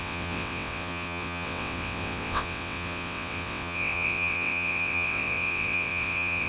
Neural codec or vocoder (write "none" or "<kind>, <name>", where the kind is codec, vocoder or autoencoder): vocoder, WaveNeXt